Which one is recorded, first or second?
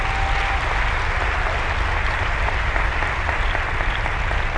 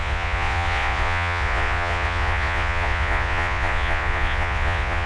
first